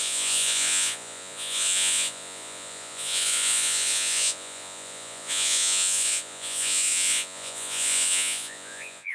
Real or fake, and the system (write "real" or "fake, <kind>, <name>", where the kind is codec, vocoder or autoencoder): fake, vocoder, Vocos